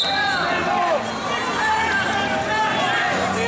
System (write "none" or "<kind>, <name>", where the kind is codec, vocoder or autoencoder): none